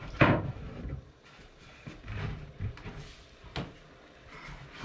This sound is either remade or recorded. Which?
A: remade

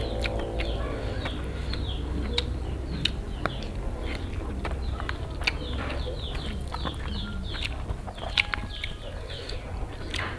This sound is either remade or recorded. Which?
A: recorded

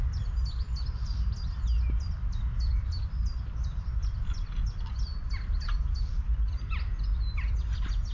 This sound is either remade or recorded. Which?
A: recorded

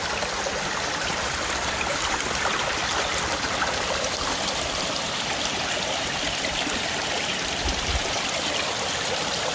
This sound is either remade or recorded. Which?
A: remade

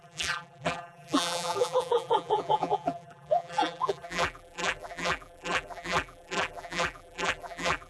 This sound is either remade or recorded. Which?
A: remade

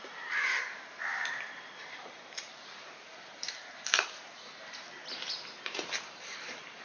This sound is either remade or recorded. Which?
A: remade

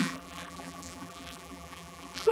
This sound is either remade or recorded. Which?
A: remade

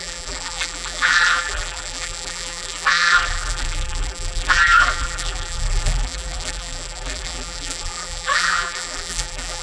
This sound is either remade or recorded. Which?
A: remade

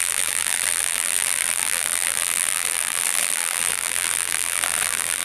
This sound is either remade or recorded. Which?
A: remade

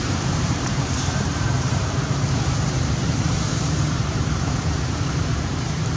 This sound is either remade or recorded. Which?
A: remade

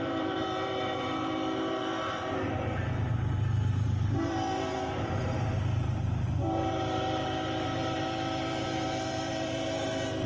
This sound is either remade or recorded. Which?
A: remade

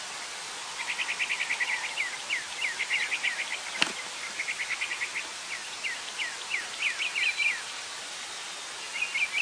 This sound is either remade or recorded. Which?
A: recorded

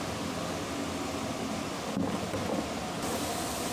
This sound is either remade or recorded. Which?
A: recorded